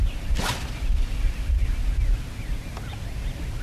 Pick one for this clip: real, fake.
real